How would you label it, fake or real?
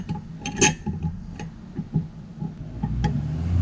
real